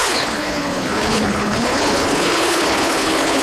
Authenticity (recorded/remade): remade